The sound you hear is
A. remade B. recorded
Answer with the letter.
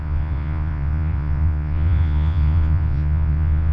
A